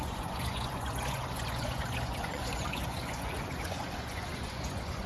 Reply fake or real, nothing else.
fake